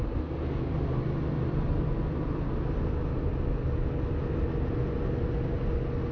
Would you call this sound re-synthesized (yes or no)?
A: no